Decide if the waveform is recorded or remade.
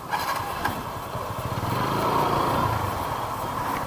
remade